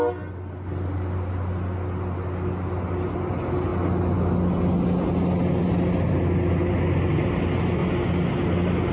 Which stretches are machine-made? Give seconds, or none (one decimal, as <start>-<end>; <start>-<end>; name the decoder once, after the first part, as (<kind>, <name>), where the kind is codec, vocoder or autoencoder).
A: none